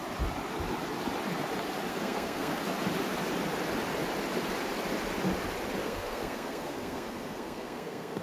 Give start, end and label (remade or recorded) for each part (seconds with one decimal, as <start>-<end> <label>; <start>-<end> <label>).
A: 0.0-1.9 recorded; 1.9-2.6 remade; 2.6-5.8 recorded; 5.8-8.2 remade